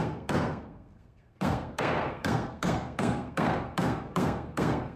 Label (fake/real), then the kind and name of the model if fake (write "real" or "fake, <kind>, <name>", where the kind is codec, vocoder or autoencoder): fake, codec, SNAC